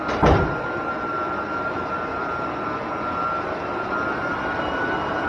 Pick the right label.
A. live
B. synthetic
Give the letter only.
B